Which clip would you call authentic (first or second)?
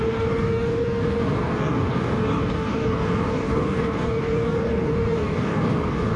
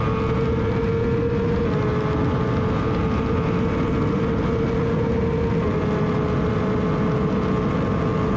second